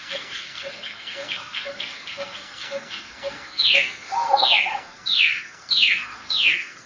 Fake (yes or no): yes